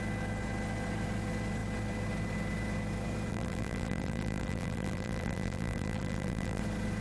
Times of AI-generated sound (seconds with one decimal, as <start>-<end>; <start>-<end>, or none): 3.3-6.6